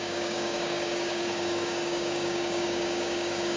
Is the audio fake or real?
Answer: fake